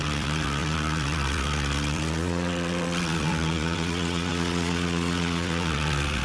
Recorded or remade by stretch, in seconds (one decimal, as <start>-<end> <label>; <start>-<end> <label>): 0.0-6.2 remade